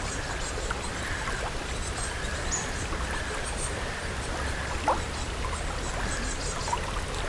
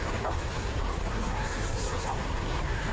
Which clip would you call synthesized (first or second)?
second